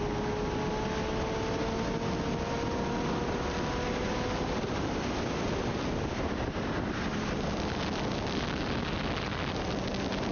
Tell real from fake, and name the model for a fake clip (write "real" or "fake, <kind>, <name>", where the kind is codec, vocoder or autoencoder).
real